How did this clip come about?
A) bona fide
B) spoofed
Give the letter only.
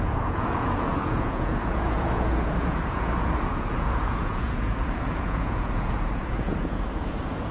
B